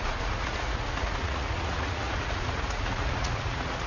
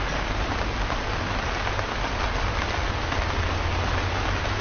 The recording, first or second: second